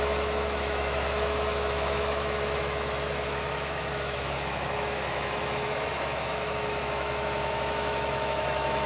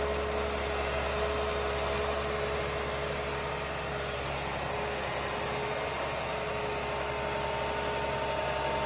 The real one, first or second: second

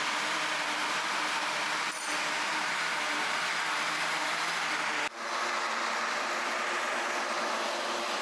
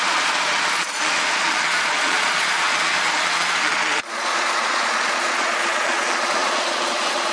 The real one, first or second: first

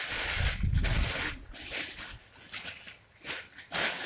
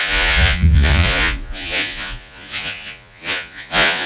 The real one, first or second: first